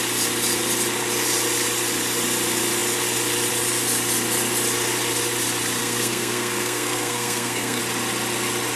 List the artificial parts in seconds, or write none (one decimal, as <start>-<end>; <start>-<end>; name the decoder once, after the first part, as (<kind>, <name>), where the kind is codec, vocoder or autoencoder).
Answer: 5.8-7.8 (codec, SNAC)